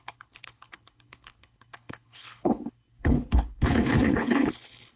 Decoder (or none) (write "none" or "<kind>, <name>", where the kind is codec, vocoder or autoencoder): codec, HILCodec